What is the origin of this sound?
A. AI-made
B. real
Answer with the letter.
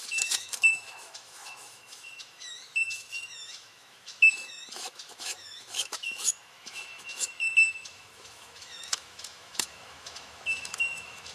A